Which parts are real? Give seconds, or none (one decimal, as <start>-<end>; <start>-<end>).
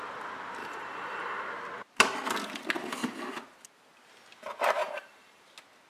0.0-0.6; 1.4-4.8; 5.4-5.9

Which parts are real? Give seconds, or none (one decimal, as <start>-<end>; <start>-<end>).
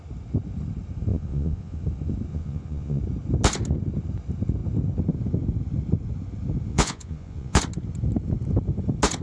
0.0-1.1; 1.8-2.3; 3.0-6.7; 7.6-9.2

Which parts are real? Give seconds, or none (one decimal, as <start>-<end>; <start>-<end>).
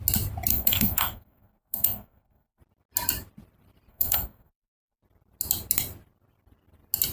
0.0-0.5; 2.6-3.9; 5.0-7.1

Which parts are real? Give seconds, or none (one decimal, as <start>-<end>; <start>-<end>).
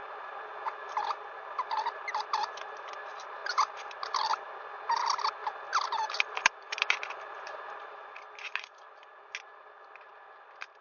0.0-10.8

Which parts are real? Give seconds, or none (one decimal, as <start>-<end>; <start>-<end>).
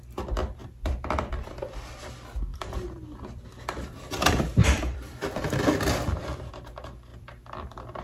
0.0-2.5; 5.4-7.1